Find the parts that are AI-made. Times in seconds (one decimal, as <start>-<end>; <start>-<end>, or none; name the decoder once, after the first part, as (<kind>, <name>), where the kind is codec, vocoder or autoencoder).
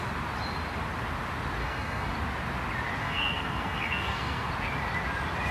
1.6-2.1 (codec, SNAC); 3.0-4.5